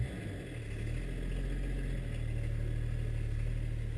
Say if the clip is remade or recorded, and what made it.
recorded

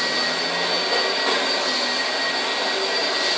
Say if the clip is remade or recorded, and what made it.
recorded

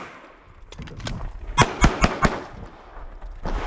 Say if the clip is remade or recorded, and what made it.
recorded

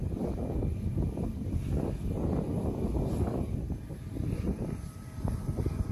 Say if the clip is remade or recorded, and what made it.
recorded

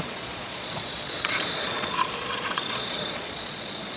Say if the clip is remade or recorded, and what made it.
remade, vocoder, Vocos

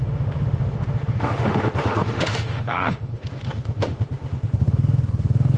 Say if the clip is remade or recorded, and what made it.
remade, autoencoder, DAC-VAE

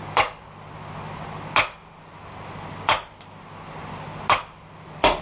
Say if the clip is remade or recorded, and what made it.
recorded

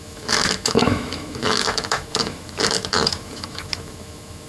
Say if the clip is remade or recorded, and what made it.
remade, autoencoder, DAC-VAE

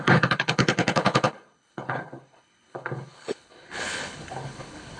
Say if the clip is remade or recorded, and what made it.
remade, codec, HILCodec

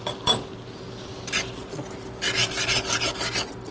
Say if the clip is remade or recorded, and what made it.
recorded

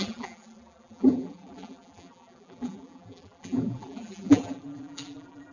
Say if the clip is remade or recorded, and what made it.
remade, vocoder, BigVGAN v2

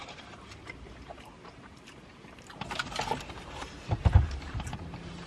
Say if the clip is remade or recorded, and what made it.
remade, vocoder, BigVGAN v2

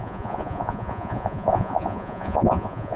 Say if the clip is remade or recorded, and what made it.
remade, vocoder, Vocos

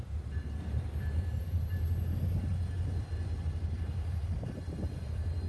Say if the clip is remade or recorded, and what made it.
recorded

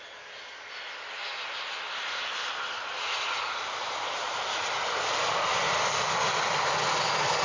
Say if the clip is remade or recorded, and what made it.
recorded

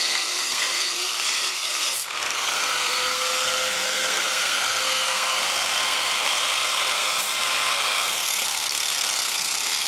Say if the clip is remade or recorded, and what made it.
remade, codec, SNAC